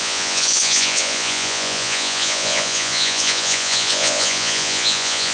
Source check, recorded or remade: remade